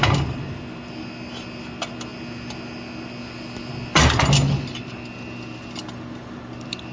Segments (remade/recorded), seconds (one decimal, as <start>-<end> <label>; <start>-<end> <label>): 0.0-6.9 recorded